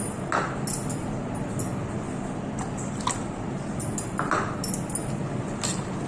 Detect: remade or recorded recorded